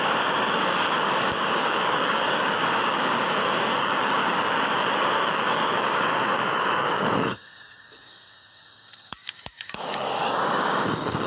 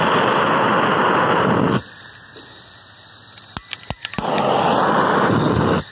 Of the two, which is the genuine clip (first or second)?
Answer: second